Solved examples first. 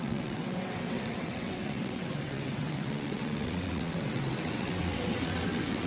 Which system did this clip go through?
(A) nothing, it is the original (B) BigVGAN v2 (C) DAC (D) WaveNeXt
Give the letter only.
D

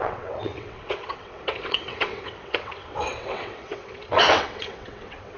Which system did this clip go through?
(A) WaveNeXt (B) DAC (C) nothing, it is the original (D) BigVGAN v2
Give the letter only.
A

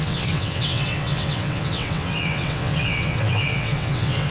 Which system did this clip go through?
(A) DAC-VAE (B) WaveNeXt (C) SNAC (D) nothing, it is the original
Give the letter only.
B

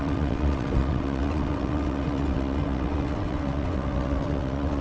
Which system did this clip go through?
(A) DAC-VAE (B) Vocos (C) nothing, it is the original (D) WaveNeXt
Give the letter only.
D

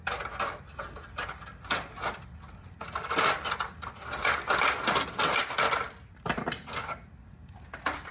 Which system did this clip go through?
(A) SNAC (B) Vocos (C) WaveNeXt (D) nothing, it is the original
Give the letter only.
D